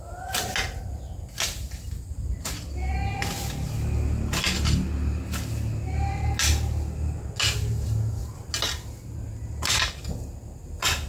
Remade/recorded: recorded